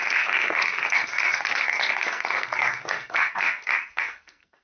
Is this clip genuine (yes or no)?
no